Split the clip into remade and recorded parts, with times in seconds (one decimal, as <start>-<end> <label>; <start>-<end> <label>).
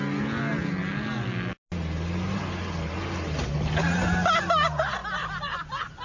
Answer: 0.0-5.0 recorded; 5.0-6.0 remade